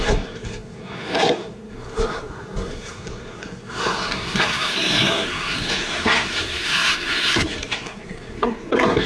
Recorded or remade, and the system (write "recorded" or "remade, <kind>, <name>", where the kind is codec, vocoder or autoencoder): remade, codec, SNAC